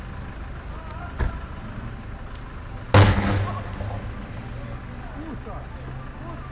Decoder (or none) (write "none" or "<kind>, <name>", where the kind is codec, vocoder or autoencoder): none